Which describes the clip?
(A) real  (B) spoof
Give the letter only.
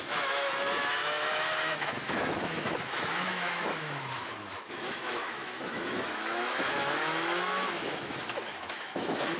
B